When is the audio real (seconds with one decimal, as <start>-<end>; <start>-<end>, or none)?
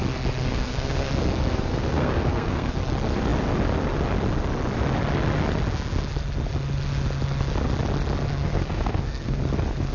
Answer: 0.0-0.4; 1.1-1.7; 2.7-8.3; 9.5-9.9